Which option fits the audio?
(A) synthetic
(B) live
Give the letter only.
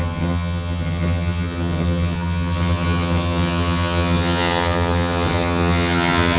A